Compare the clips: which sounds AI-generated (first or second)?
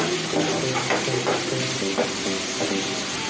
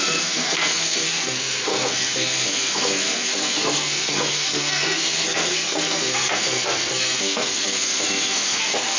second